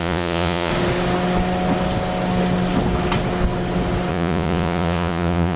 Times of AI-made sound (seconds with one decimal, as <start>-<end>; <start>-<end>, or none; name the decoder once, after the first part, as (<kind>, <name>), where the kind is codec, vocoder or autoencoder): 0.0-0.7 (vocoder, Vocos); 4.1-5.6